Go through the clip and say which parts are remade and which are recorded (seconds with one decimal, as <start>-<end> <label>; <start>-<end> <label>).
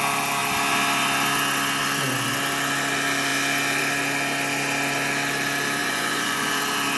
0.0-5.8 recorded; 5.8-6.6 remade; 6.6-7.0 recorded